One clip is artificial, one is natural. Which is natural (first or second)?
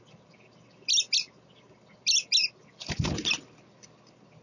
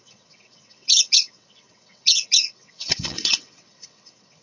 first